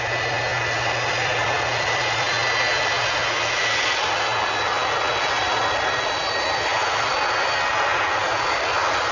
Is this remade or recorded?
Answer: recorded